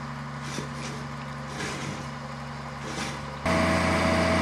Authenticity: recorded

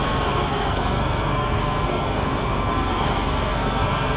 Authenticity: remade